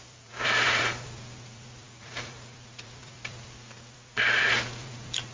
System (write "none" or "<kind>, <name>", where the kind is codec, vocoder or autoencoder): vocoder, BigVGAN v2